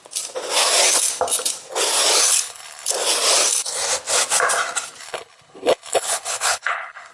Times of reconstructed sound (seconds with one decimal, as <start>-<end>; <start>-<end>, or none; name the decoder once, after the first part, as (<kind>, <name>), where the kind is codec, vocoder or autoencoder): 2.2-2.9 (codec, HILCodec); 5.0-7.1